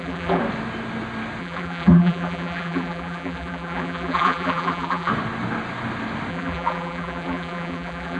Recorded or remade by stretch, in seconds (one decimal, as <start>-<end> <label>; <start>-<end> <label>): 0.0-0.4 remade; 0.4-1.4 recorded; 1.4-5.1 remade; 5.1-6.3 recorded; 6.3-8.2 remade